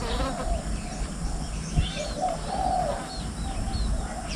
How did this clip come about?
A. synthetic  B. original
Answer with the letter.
B